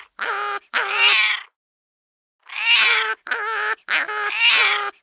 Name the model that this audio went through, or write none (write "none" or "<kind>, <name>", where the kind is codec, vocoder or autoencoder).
none